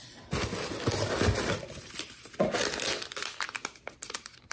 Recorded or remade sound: recorded